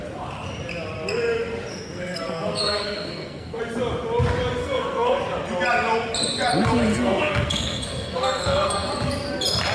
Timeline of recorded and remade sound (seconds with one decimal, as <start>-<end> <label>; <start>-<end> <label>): 0.0-1.7 recorded; 1.7-3.6 remade; 3.6-4.6 recorded; 4.6-5.2 remade; 5.2-6.9 recorded; 6.9-8.9 remade; 8.9-9.7 recorded